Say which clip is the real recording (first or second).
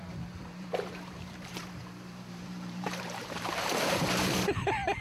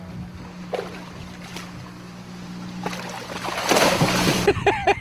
second